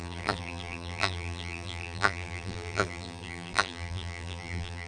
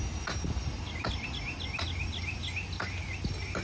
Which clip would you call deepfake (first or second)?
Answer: first